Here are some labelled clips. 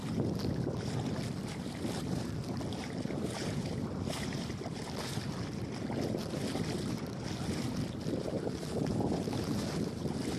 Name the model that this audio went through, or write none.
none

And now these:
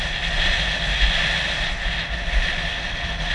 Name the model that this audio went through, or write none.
none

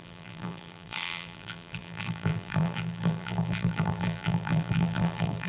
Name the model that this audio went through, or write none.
vocoder, BigVGAN v2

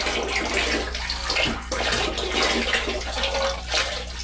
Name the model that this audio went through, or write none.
none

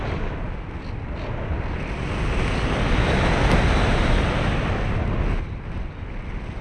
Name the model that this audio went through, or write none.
none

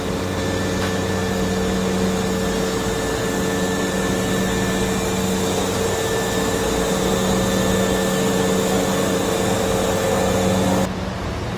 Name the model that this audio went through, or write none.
none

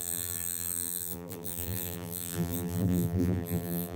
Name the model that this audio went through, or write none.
vocoder, BigVGAN v2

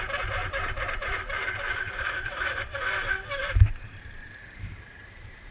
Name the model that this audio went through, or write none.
vocoder, BigVGAN v2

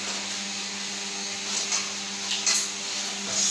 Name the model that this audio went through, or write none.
none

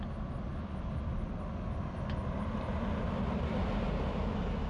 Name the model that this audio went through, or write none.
none